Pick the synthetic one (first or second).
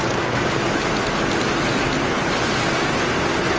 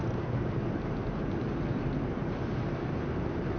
second